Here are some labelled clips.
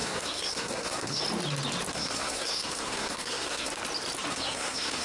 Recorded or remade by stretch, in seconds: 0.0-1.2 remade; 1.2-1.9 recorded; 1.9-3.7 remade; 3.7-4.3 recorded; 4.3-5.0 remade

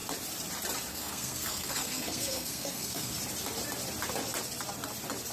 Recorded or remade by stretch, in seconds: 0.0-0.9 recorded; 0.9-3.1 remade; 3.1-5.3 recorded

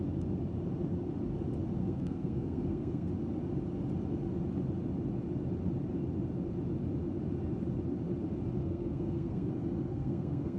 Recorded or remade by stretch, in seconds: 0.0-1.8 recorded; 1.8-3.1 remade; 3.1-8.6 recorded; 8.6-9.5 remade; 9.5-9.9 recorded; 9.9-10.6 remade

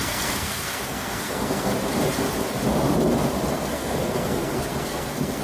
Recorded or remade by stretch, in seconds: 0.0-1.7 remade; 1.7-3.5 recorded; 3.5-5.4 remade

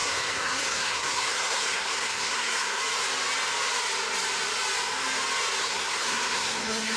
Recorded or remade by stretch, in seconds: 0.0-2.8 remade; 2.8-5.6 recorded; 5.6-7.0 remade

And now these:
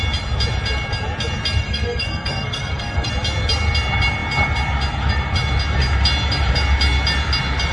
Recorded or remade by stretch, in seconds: 0.0-1.6 recorded; 1.6-3.1 remade; 3.1-7.7 recorded

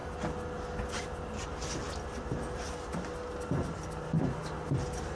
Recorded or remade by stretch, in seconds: 0.0-5.2 recorded